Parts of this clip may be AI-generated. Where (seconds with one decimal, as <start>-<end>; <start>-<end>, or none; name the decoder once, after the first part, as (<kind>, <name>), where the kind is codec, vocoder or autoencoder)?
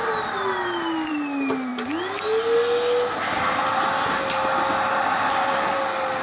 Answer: none